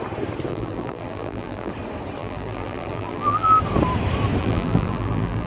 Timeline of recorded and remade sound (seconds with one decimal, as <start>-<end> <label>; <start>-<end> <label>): 0.0-0.5 recorded; 0.5-1.7 remade; 1.7-2.2 recorded; 2.2-3.6 remade; 3.6-4.4 recorded; 4.4-5.5 remade